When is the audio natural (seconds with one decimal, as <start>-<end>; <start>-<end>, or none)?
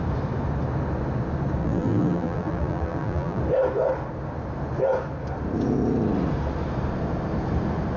0.0-1.6; 3.4-8.0